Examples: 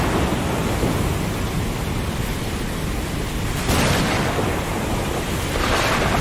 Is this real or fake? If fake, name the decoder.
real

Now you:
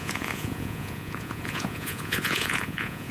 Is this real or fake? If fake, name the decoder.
fake, vocoder, Vocos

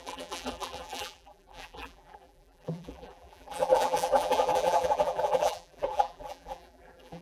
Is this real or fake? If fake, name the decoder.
fake, vocoder, BigVGAN v2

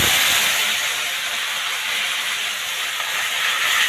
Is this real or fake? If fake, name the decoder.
real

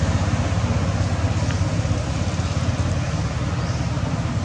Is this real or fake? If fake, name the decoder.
real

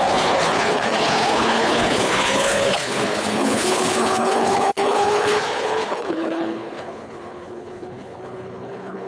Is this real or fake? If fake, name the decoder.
fake, codec, HILCodec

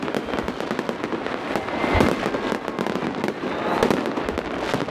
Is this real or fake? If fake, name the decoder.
real